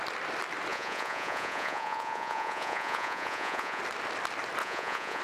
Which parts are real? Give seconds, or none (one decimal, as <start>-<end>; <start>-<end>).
0.0-0.7; 3.8-4.6